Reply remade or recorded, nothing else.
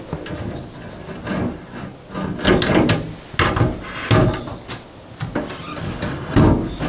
recorded